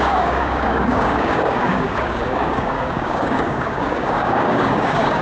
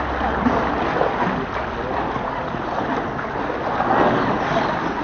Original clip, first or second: second